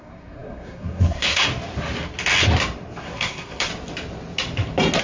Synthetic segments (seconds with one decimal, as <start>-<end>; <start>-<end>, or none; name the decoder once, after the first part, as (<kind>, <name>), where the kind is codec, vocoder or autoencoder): 0.0-1.5 (codec, SNAC); 3.0-3.7